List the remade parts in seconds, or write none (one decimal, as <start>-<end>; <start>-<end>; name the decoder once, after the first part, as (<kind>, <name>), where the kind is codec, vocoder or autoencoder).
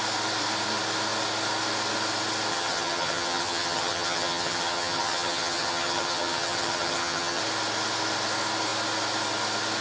2.5-7.4 (vocoder, HiFi-GAN)